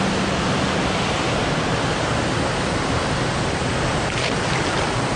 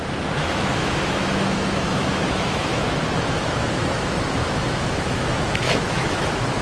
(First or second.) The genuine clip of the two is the first